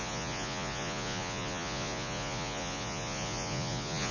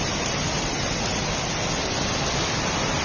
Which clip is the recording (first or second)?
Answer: second